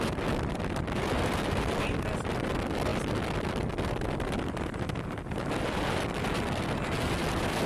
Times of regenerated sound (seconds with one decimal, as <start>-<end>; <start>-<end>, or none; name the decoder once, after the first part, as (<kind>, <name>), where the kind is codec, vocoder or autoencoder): none